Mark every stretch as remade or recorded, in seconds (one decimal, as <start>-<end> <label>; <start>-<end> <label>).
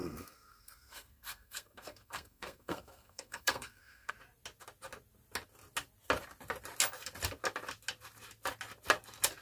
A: 0.0-4.1 remade; 4.1-9.4 recorded